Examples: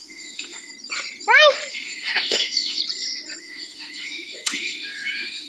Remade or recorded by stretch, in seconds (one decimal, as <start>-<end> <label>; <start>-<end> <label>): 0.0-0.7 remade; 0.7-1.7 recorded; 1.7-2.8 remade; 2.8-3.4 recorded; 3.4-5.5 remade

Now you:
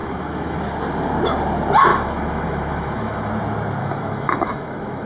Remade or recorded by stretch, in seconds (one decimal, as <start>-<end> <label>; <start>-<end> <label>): 0.0-0.7 remade; 0.7-1.9 recorded; 1.9-3.3 remade; 3.3-3.8 recorded; 3.8-5.1 remade

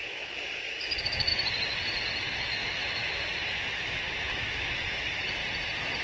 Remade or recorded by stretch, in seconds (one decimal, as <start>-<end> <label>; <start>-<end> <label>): 0.0-1.3 remade; 1.3-2.2 recorded; 2.2-5.4 remade; 5.4-6.0 recorded

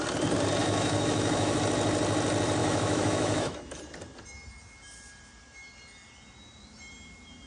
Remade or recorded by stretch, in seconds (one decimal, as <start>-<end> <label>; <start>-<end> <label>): 0.0-0.6 recorded; 0.6-1.6 remade; 1.6-2.6 recorded; 2.6-3.8 remade; 3.8-7.5 recorded